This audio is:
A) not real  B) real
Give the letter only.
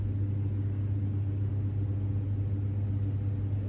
B